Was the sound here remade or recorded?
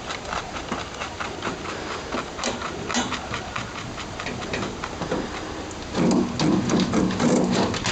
recorded